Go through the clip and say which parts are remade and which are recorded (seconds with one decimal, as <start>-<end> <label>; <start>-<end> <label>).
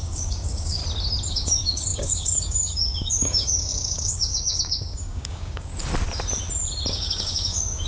0.0-0.8 remade; 0.8-1.3 recorded; 1.3-5.7 remade; 5.7-6.9 recorded; 6.9-7.9 remade